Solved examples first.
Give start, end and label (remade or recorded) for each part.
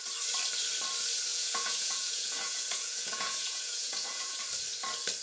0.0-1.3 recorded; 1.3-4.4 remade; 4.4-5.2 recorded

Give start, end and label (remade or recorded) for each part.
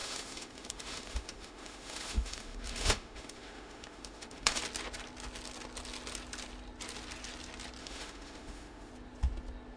0.0-4.6 remade; 4.6-7.8 recorded; 7.8-8.9 remade; 8.9-9.8 recorded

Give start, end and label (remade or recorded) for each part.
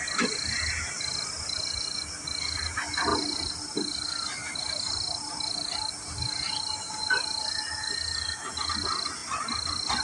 0.0-10.0 recorded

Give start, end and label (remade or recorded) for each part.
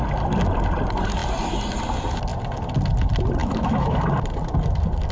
0.0-3.4 recorded; 3.4-4.0 remade; 4.0-5.1 recorded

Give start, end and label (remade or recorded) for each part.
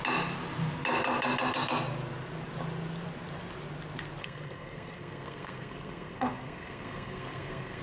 0.0-4.2 recorded; 4.2-7.8 remade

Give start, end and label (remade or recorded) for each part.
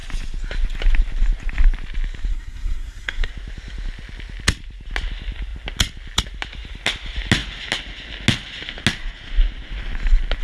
0.0-2.3 recorded; 2.3-3.3 remade; 3.3-10.4 recorded